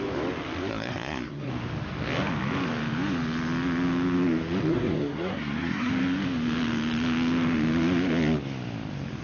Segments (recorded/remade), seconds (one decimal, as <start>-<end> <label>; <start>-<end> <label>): 0.0-0.6 recorded; 0.6-1.5 remade; 1.5-4.7 recorded; 4.7-5.9 remade; 5.9-9.2 recorded

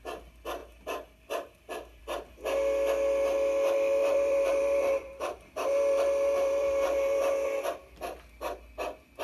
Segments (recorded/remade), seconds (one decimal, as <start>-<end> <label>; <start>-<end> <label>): 0.0-4.0 recorded; 4.0-7.2 remade; 7.2-9.2 recorded

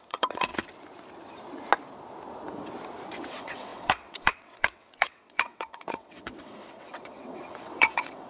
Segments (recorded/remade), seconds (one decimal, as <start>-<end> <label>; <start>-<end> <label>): 0.0-0.5 remade; 0.5-3.3 recorded; 3.3-8.3 remade

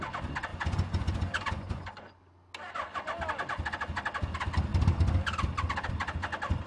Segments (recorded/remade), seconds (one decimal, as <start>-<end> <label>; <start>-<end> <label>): 0.0-0.5 recorded; 0.5-2.1 remade; 2.1-6.7 recorded